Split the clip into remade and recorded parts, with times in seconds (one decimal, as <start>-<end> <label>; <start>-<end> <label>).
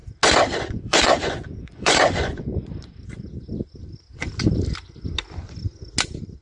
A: 0.0-0.7 recorded; 0.7-2.5 remade; 2.5-6.4 recorded